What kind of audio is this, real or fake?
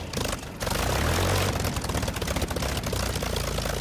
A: real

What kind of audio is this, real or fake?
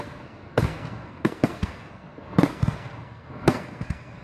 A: fake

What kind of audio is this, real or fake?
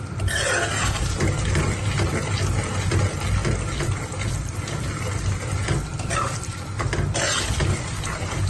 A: real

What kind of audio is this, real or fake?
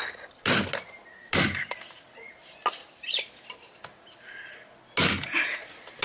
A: real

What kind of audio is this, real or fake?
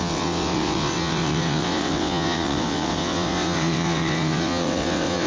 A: fake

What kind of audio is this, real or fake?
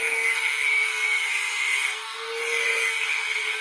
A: fake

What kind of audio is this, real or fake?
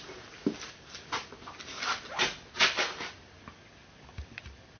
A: real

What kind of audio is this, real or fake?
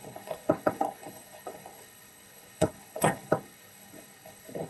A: fake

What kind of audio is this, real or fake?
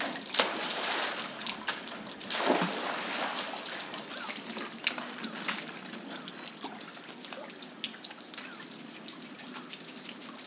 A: real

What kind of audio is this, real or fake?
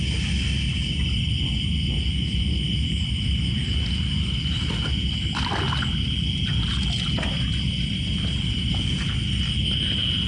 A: real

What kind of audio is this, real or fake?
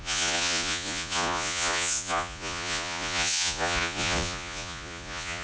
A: fake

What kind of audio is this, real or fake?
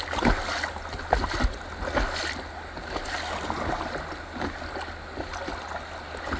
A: real